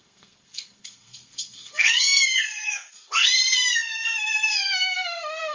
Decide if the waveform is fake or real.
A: fake